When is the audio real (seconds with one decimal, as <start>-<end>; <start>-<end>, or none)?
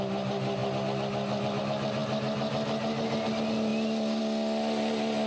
0.0-5.3